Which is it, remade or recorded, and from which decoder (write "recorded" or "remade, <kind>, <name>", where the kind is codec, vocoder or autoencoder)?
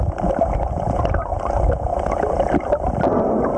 recorded